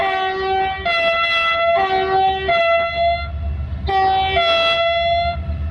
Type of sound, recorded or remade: recorded